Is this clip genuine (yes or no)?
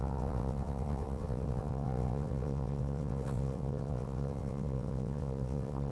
no